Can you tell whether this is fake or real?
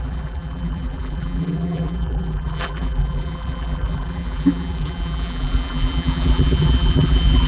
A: fake